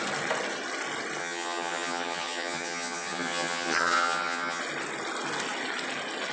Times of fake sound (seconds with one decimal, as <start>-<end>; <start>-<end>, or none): 1.2-4.6